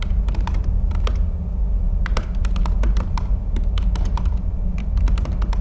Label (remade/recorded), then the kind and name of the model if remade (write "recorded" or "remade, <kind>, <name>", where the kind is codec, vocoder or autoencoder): recorded